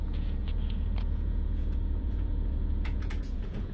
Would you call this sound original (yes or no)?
no